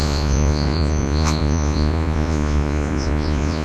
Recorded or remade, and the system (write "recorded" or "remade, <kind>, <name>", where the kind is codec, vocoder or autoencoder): remade, vocoder, Vocos